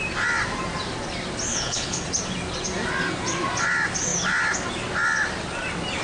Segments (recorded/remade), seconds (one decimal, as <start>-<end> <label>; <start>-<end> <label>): 0.0-1.5 recorded; 1.5-2.0 remade; 2.0-6.0 recorded